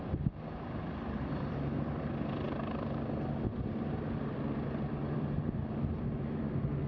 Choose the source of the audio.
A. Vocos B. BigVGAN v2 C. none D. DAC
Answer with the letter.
B